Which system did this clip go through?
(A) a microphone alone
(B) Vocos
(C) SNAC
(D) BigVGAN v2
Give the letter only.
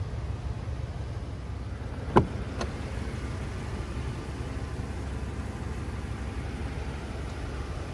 A